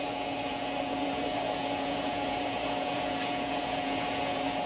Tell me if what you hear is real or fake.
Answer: fake